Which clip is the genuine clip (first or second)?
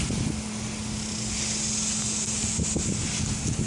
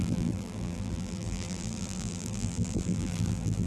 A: first